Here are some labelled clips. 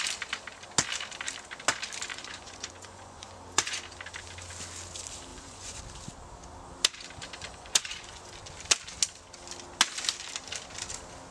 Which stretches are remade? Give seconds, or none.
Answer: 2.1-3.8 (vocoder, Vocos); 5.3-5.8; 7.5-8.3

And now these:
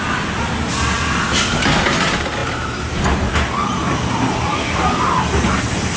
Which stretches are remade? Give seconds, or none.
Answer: none

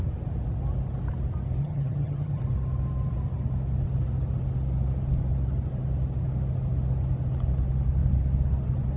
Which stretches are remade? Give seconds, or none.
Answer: 1.6-2.4 (vocoder, HiFi-GAN)